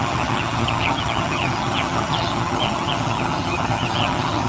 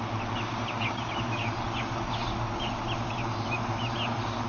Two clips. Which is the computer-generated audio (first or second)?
first